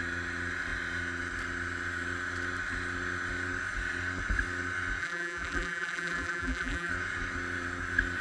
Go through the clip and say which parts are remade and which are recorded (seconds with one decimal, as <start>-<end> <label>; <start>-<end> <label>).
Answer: 0.0-5.0 recorded; 5.0-6.9 remade; 6.9-8.2 recorded